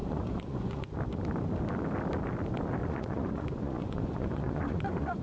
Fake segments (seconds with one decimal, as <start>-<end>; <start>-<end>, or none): 0.0-1.0; 2.8-5.2